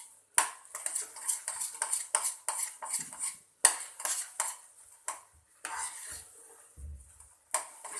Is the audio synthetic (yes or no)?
no